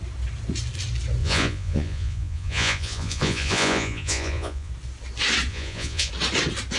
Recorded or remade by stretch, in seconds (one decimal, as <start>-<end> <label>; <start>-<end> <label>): 0.0-1.2 recorded; 1.2-4.7 remade; 4.7-5.5 recorded; 5.5-6.1 remade; 6.1-6.8 recorded